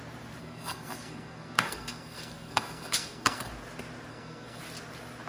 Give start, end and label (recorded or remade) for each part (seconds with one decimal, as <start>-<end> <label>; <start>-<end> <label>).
0.0-0.4 recorded; 0.4-3.5 remade; 3.5-4.1 recorded; 4.1-4.6 remade; 4.6-5.3 recorded